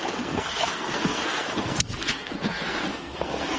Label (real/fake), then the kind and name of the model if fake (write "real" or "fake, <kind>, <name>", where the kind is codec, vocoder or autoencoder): fake, codec, SNAC